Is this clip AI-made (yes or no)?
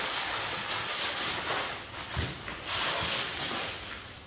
no